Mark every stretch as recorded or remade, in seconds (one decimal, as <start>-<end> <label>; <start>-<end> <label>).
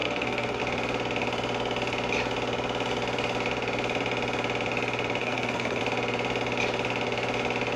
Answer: 0.0-0.6 remade; 0.6-5.2 recorded; 5.2-5.8 remade; 5.8-7.8 recorded